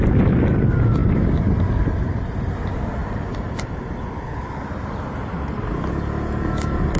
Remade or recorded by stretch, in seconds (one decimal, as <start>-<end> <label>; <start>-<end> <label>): 0.0-7.0 recorded